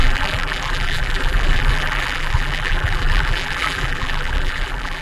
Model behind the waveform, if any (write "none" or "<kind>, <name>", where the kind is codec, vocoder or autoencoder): vocoder, BigVGAN v2